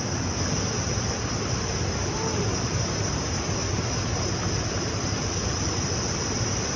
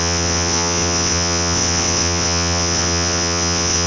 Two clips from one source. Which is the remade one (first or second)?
second